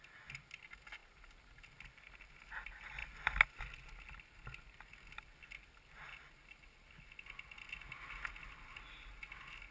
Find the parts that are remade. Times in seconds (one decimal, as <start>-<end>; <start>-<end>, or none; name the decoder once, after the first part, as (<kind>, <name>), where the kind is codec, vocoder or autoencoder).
none